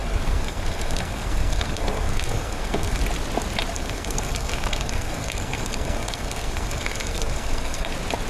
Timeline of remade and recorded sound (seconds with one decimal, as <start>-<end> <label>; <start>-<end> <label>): 0.0-3.0 remade; 3.0-3.7 recorded; 3.7-7.9 remade; 7.9-8.3 recorded